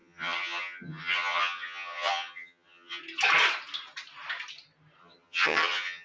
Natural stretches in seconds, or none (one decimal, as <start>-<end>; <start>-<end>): 3.0-5.0